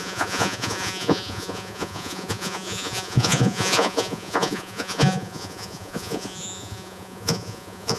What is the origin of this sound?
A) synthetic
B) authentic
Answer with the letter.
A